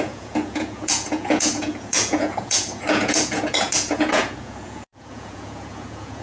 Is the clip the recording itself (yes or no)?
no